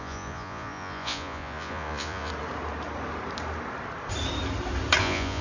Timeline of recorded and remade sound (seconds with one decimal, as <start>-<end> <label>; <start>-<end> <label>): 0.0-2.3 remade; 2.3-5.0 recorded; 5.0-5.4 remade